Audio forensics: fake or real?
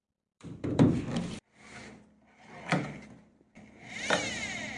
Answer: fake